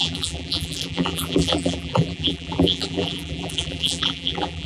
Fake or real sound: fake